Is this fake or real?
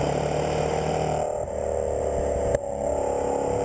real